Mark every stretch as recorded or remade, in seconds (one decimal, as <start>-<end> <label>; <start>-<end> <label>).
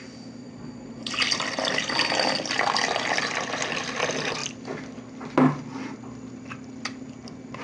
0.0-0.4 recorded; 0.4-1.1 remade; 1.1-7.6 recorded